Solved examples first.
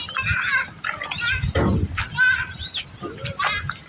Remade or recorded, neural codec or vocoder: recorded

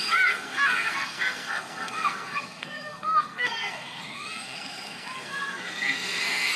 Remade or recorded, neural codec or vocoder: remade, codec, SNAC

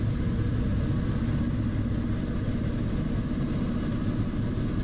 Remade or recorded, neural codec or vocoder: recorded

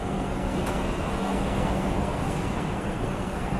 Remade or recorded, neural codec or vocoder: remade, codec, SNAC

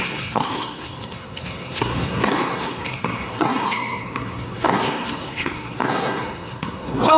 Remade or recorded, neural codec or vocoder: remade, codec, SNAC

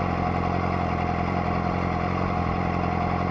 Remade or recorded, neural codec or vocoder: recorded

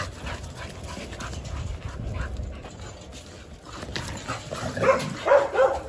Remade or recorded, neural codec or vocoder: recorded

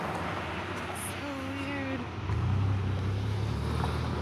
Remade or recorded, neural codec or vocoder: recorded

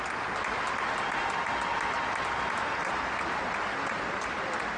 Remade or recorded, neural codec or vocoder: recorded